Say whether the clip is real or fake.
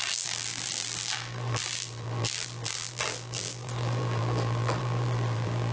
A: fake